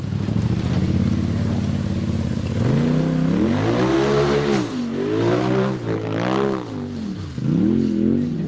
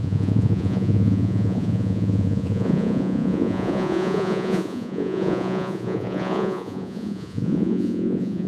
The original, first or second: first